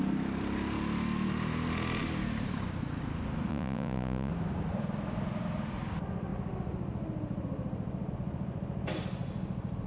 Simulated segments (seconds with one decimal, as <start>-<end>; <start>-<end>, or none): 3.5-4.3